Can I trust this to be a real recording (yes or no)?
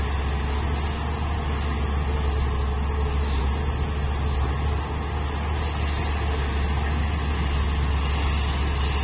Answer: yes